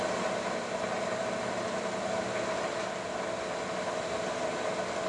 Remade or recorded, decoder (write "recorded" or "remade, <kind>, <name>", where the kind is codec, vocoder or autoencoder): recorded